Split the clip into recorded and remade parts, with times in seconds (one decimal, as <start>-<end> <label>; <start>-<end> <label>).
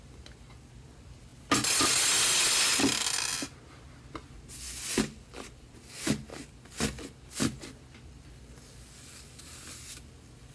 0.0-10.5 recorded